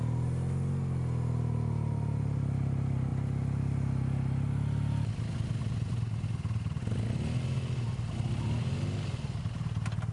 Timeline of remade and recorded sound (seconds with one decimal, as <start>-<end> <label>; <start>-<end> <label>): 0.0-10.1 recorded

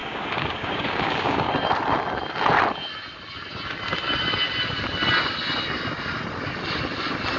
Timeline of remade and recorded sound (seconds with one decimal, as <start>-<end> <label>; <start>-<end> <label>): 0.0-1.5 remade; 1.5-7.4 recorded

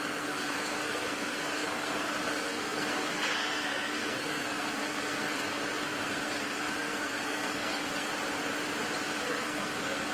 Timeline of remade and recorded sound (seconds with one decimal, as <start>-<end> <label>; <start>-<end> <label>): 0.0-8.1 remade; 8.1-9.2 recorded; 9.2-10.1 remade

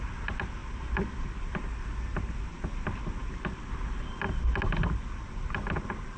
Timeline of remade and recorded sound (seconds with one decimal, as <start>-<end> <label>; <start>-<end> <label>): 0.0-6.2 recorded

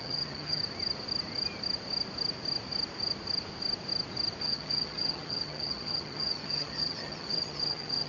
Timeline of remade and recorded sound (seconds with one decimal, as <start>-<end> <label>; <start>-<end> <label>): 0.0-0.6 remade; 0.6-4.4 recorded; 4.4-8.1 remade